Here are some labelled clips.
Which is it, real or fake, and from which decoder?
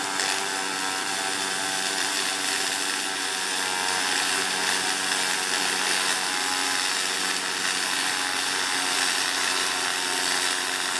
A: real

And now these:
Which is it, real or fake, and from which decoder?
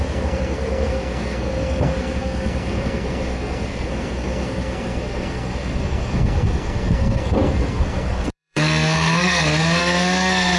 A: fake, codec, SNAC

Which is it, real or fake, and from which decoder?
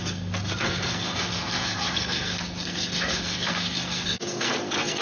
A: fake, codec, SNAC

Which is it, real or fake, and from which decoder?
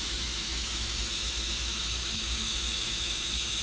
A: fake, autoencoder, DAC-VAE